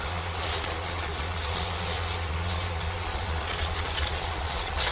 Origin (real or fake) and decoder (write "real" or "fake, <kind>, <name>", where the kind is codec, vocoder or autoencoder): fake, vocoder, Vocos